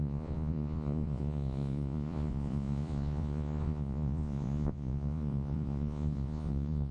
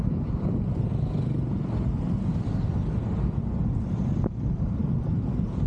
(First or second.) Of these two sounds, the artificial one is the first